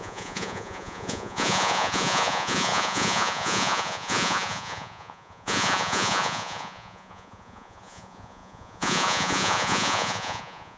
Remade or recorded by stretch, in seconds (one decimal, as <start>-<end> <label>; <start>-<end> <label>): 0.0-10.8 remade